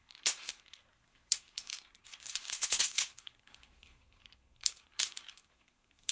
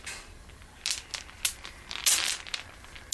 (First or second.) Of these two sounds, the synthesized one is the first